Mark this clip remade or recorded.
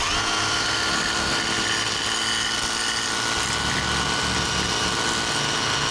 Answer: recorded